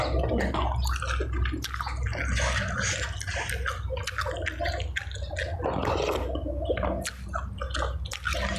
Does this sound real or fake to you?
real